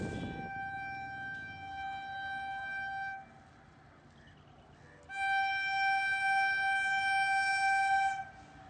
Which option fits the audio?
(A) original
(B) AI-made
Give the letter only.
A